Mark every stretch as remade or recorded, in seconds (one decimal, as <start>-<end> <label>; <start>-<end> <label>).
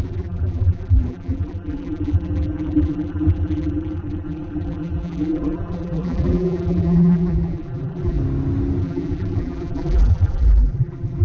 0.0-8.2 remade; 8.2-8.8 recorded; 8.8-11.2 remade